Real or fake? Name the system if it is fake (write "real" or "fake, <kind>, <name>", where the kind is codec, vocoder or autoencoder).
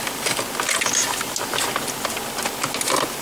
real